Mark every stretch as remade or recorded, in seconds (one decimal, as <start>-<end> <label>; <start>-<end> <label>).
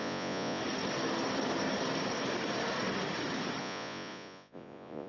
0.0-0.6 remade; 0.6-3.6 recorded; 3.6-5.1 remade